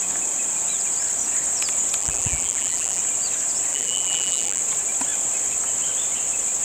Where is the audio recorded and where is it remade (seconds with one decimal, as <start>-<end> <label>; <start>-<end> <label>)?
0.0-2.0 recorded; 2.0-3.0 remade; 3.0-3.7 recorded; 3.7-4.6 remade; 4.6-6.6 recorded